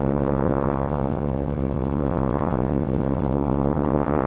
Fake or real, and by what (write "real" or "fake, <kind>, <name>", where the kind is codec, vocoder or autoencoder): fake, vocoder, WaveNeXt